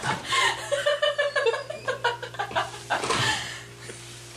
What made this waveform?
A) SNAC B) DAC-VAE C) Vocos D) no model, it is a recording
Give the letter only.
D